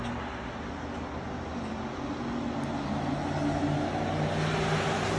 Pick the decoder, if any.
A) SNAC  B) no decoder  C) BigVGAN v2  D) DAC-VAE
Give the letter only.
B